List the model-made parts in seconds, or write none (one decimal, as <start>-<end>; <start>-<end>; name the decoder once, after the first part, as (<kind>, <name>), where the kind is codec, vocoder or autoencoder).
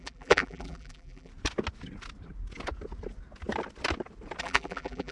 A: 0.0-1.3 (vocoder, BigVGAN v2); 4.4-5.1